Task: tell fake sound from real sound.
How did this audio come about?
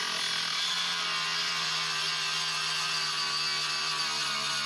real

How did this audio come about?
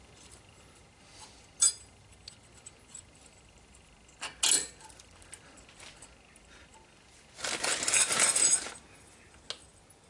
real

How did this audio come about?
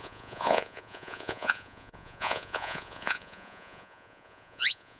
fake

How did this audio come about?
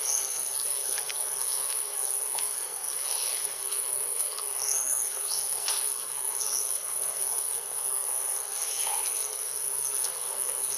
fake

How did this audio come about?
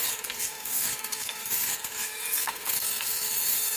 fake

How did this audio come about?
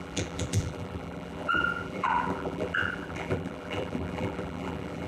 fake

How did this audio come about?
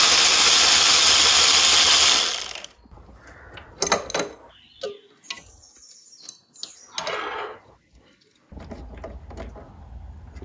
real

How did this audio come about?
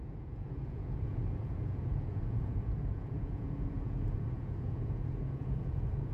fake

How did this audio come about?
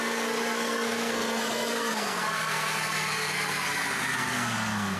fake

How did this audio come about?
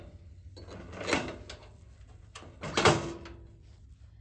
real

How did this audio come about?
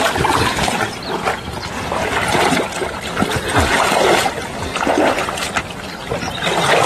real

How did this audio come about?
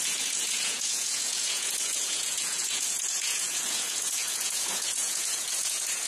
fake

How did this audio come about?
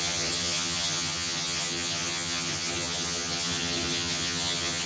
fake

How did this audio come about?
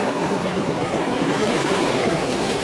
fake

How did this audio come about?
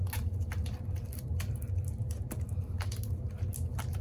real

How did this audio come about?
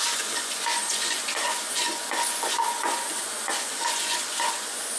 fake